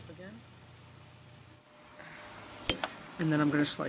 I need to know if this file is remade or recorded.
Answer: recorded